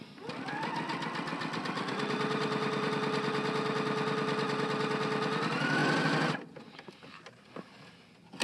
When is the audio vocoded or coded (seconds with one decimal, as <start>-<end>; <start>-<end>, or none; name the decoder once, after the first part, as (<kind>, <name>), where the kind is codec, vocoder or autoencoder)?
1.3-2.9 (vocoder, BigVGAN v2); 5.8-6.5